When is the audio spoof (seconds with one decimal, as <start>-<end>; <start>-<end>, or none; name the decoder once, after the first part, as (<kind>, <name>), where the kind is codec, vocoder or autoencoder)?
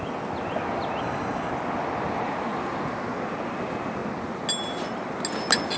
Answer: 1.0-1.5 (codec, DAC)